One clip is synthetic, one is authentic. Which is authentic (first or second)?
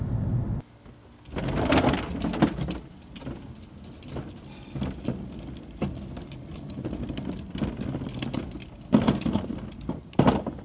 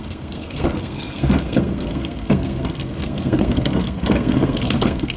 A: first